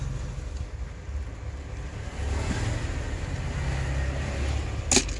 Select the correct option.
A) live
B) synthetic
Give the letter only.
A